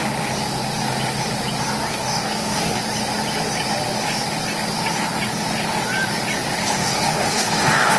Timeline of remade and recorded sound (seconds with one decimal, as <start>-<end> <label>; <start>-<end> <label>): 0.0-1.9 recorded; 1.9-2.8 remade; 2.8-6.8 recorded; 6.8-8.0 remade